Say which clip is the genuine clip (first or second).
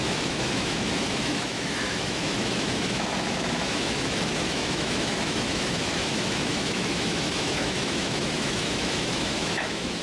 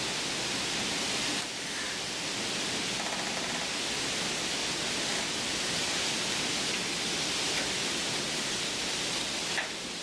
second